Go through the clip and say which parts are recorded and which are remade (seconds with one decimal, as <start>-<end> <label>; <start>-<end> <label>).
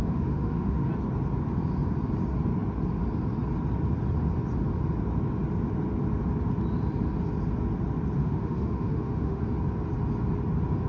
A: 0.0-0.9 remade; 0.9-8.2 recorded; 8.2-9.4 remade; 9.4-10.9 recorded